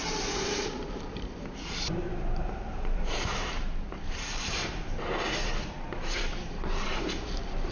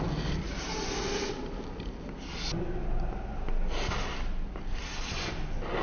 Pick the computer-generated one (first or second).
first